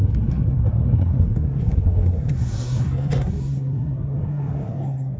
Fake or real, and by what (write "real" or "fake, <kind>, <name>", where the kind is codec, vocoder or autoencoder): fake, codec, SNAC